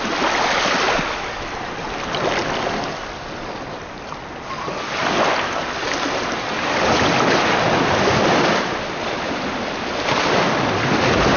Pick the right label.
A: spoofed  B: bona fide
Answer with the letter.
B